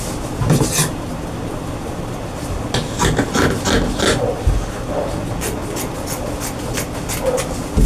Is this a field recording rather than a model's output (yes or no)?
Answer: yes